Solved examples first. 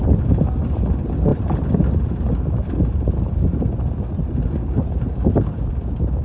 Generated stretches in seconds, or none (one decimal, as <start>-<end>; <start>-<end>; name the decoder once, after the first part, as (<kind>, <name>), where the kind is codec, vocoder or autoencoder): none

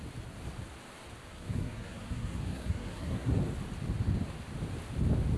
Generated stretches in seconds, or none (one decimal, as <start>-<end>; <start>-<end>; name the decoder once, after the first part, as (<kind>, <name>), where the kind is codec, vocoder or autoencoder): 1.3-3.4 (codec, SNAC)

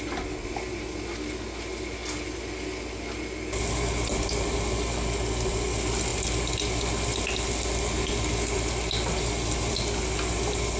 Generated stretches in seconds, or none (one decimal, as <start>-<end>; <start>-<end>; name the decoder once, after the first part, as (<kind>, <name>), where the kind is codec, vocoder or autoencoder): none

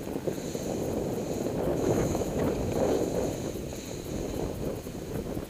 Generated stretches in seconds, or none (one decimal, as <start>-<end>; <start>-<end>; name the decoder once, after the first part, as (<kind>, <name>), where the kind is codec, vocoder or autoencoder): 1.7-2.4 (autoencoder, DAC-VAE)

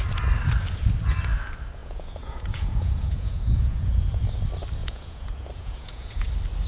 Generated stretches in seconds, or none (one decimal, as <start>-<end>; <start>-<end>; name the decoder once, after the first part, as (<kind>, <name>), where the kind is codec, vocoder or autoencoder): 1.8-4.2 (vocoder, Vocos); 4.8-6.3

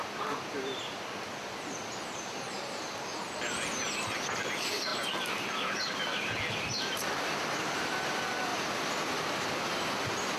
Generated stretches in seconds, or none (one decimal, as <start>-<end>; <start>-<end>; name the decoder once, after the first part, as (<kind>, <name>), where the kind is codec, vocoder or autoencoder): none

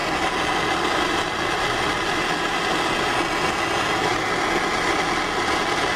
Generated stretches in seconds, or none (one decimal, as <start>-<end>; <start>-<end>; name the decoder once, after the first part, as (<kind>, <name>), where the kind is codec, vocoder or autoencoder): none

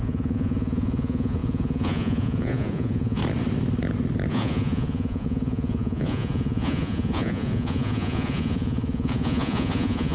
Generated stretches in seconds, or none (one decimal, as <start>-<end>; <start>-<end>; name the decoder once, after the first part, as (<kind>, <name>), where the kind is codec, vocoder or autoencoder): 0.0-3.2 (vocoder, Vocos); 4.3-10.1